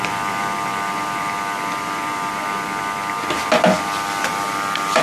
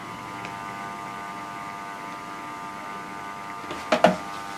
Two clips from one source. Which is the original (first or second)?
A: second